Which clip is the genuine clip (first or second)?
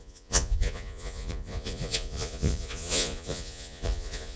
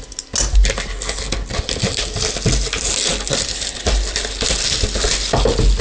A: second